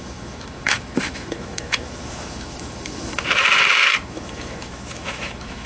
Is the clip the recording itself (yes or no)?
no